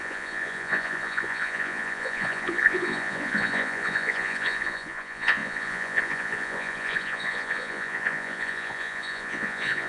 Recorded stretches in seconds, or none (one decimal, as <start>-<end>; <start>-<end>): none